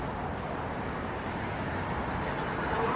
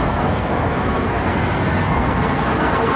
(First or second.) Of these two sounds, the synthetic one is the second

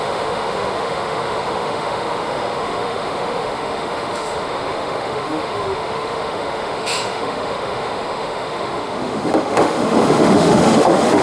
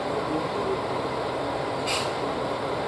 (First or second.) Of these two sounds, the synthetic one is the first